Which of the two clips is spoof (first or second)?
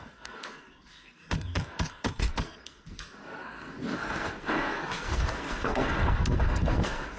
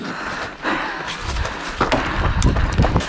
first